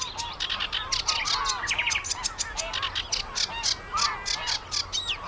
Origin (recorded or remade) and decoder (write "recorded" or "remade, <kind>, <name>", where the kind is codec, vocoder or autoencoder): recorded